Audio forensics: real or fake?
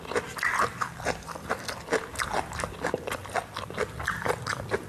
real